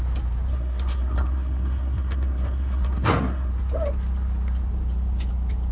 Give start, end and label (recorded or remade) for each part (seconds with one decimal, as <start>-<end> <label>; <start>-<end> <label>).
0.0-0.5 recorded; 0.5-3.5 remade; 3.5-5.7 recorded